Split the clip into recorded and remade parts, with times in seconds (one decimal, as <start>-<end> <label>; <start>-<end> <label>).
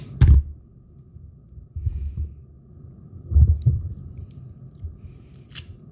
0.0-5.9 recorded